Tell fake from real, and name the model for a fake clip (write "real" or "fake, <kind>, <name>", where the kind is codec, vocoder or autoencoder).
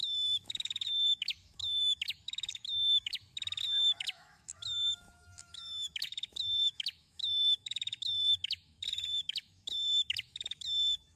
fake, autoencoder, DAC-VAE